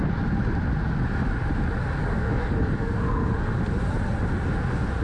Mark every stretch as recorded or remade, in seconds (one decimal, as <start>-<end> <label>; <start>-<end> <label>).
0.0-2.0 recorded; 2.0-3.3 remade; 3.3-5.0 recorded